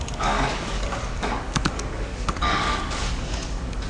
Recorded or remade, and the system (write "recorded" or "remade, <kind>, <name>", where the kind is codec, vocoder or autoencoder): remade, codec, DAC